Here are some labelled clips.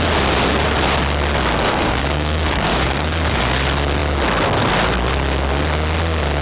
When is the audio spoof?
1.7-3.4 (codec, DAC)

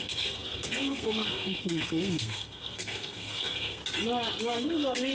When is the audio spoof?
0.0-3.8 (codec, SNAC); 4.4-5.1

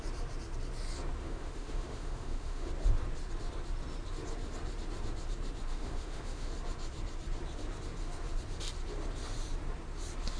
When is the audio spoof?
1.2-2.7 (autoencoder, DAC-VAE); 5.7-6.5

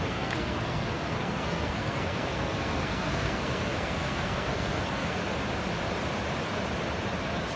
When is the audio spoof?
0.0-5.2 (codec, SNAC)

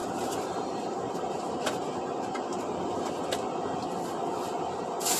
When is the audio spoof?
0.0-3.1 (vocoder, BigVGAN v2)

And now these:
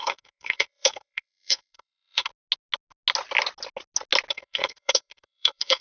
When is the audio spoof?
0.0-2.3 (codec, SNAC); 4.3-5.8

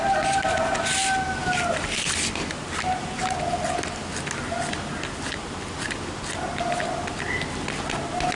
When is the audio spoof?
none